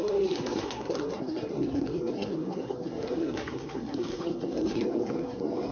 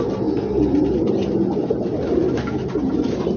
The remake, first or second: first